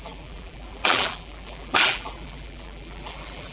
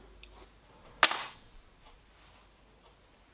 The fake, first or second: first